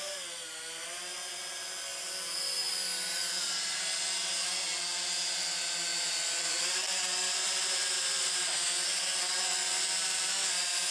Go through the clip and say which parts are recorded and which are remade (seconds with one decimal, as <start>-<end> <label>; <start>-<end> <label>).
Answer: 0.0-3.2 recorded; 3.2-3.8 remade; 3.8-5.9 recorded; 5.9-8.3 remade; 8.3-10.9 recorded